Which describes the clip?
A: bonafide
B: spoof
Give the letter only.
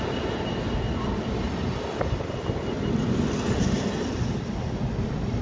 A